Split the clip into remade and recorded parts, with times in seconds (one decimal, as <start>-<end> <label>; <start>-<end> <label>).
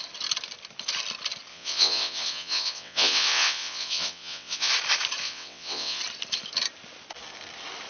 0.0-1.5 recorded; 1.5-4.7 remade; 4.7-5.2 recorded; 5.2-6.0 remade; 6.0-7.9 recorded